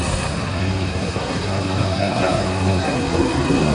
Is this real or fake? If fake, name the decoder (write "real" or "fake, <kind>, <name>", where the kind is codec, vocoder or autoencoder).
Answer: fake, codec, SNAC